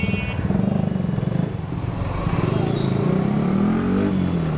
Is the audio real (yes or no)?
yes